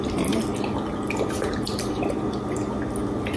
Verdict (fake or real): real